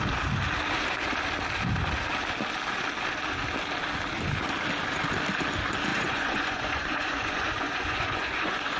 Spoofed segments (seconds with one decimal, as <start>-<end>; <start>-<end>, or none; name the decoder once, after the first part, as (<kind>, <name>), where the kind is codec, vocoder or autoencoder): 5.9-8.8 (vocoder, Vocos)